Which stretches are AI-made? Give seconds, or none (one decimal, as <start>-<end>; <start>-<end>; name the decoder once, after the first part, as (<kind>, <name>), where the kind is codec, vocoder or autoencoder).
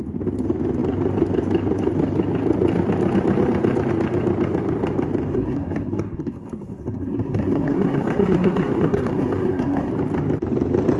5.3-9.9 (codec, SNAC)